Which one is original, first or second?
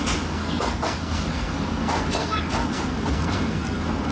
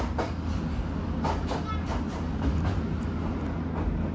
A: second